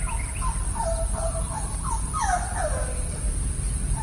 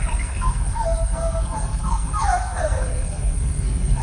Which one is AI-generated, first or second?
second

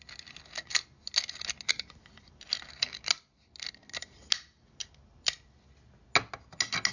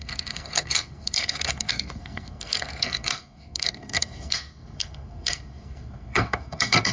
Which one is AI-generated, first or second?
second